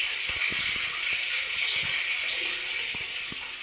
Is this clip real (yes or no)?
yes